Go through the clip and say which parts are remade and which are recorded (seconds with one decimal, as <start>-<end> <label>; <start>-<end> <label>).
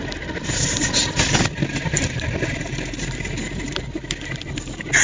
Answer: 0.0-1.0 recorded; 1.0-4.0 remade; 4.0-5.0 recorded